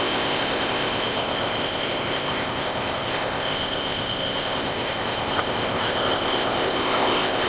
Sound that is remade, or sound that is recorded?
remade